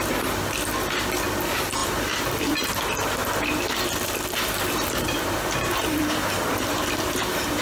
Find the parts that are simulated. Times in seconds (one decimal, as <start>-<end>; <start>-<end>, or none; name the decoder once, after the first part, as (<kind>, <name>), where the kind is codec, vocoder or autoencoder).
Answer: 1.8-2.8 (vocoder, BigVGAN v2); 3.2-7.6